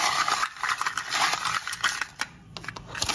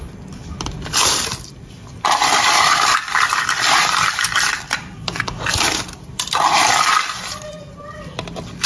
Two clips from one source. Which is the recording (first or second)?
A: first